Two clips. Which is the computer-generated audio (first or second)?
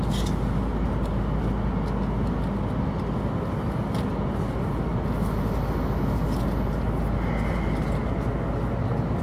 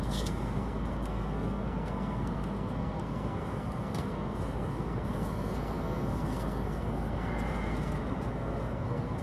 second